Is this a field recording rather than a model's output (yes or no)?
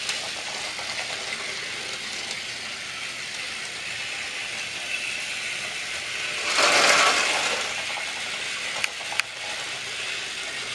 yes